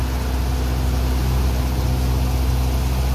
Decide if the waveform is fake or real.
real